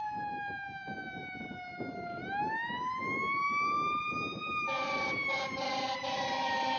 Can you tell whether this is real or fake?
real